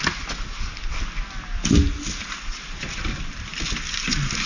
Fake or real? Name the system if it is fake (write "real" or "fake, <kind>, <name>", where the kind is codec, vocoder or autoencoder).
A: real